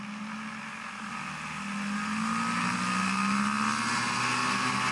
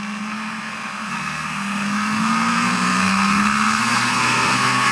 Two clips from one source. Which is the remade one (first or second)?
second